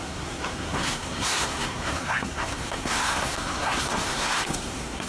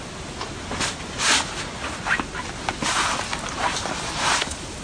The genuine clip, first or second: second